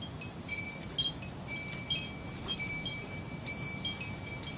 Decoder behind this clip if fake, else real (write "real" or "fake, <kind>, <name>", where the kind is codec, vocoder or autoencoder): real